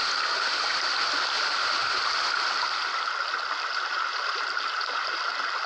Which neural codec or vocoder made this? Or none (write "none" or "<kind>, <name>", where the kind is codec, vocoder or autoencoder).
none